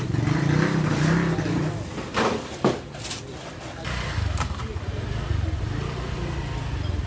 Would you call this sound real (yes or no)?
yes